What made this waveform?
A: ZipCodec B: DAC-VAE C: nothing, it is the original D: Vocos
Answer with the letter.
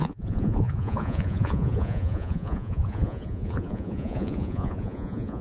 D